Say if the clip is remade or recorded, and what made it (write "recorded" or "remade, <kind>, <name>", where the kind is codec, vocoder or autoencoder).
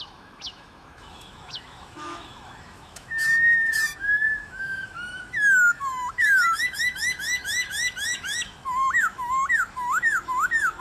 remade, autoencoder, DAC-VAE